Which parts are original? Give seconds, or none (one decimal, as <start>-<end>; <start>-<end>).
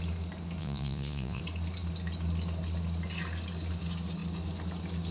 0.0-0.6; 1.4-5.1